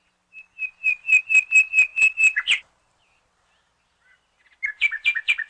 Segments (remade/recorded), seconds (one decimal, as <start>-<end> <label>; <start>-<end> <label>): 0.0-1.9 recorded; 1.9-3.2 remade; 3.2-4.8 recorded; 4.8-5.5 remade